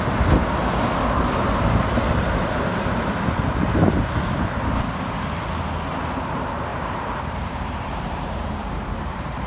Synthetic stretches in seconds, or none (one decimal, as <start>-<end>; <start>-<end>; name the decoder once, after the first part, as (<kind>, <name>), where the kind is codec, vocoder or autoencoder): 6.7-9.5 (vocoder, BigVGAN v2)